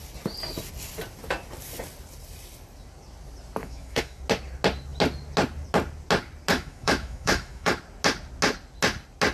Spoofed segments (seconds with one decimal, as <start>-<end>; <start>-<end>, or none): 3.6-4.2; 6.5-7.7

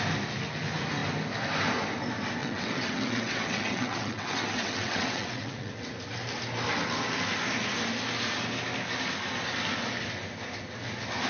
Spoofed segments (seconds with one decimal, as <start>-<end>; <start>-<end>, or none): 2.4-5.7

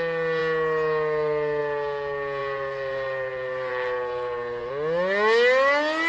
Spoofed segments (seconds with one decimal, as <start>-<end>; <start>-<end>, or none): 2.4-4.7

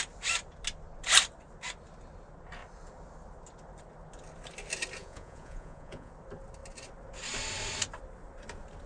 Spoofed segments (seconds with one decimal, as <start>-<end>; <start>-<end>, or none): 5.0-6.1

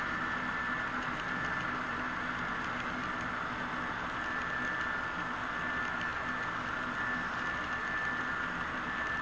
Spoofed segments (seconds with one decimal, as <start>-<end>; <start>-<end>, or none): none

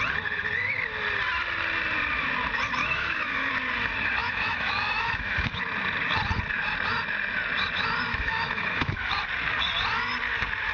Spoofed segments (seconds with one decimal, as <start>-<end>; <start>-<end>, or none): 2.8-3.5; 4.2-5.6; 8.1-9.1